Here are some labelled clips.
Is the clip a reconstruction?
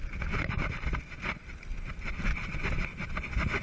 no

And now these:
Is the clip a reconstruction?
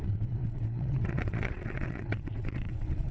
yes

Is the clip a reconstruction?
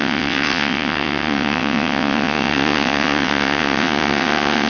yes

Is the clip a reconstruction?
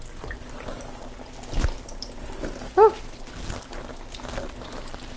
no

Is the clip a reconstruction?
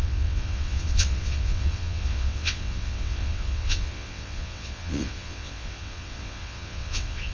yes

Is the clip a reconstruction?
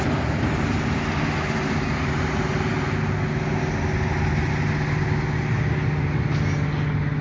no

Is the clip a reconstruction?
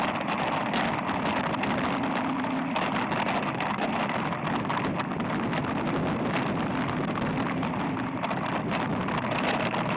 no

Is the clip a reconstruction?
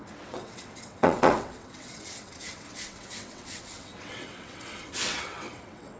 yes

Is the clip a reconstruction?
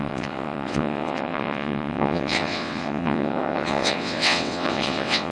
yes